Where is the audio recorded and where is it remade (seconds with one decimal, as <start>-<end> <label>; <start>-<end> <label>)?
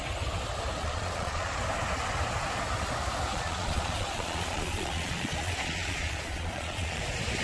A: 0.0-0.8 recorded; 0.8-1.6 remade; 1.6-3.3 recorded; 3.3-7.0 remade; 7.0-7.4 recorded